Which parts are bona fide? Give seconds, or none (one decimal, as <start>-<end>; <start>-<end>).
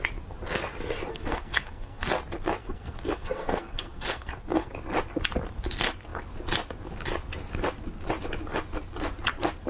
0.0-1.1; 2.1-2.6; 4.7-9.7